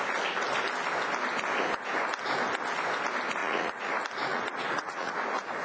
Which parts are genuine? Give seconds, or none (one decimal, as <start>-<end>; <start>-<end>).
0.0-3.4; 3.9-4.3; 5.1-5.6